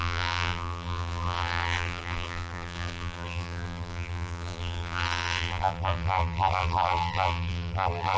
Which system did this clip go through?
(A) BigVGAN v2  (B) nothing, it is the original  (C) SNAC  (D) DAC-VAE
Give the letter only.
A